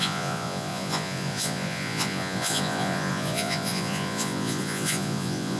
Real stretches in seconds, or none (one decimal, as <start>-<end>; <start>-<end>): none